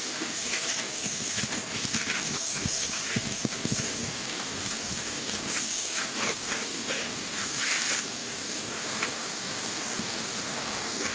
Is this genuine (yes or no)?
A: no